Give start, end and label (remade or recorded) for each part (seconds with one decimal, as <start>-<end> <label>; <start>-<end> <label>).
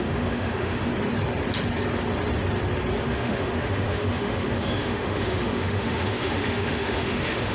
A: 0.0-0.9 remade; 0.9-3.0 recorded; 3.0-7.5 remade